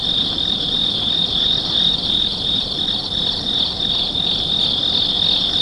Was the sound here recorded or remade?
recorded